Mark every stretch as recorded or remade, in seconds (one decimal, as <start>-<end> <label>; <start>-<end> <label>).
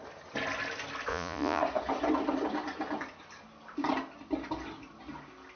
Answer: 0.0-1.1 recorded; 1.1-1.6 remade; 1.6-5.6 recorded